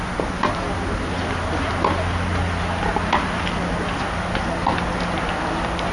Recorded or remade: recorded